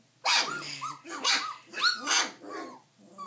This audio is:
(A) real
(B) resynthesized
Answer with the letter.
A